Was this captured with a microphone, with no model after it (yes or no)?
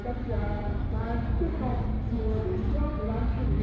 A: yes